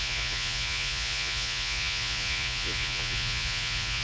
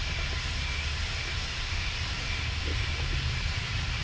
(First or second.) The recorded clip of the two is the second